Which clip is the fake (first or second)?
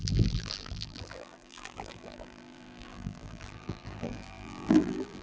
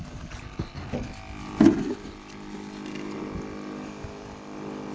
first